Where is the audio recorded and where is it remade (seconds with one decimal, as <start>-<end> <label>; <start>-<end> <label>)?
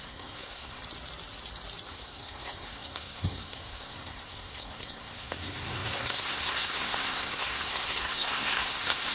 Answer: 0.0-0.8 remade; 0.8-1.9 recorded; 1.9-9.1 remade